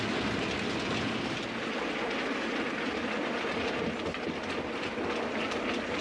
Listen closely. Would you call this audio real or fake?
real